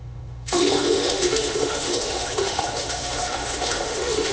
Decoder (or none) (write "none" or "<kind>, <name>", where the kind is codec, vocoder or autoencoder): autoencoder, DAC-VAE